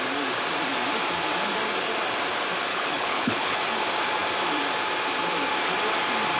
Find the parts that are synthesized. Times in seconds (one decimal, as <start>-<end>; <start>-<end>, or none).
2.7-3.6